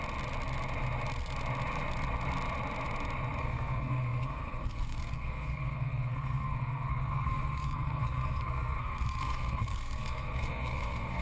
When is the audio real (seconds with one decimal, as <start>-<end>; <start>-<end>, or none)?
0.0-3.4